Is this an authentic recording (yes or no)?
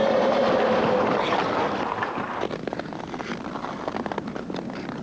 yes